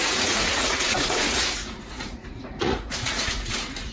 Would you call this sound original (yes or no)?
no